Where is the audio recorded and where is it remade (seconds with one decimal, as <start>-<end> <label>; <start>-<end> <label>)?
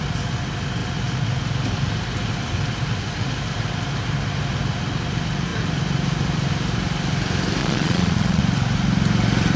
0.0-7.6 recorded; 7.6-8.4 remade; 8.4-9.6 recorded